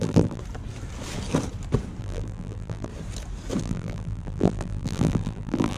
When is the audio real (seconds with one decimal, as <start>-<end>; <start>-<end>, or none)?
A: 0.4-2.0; 2.9-3.6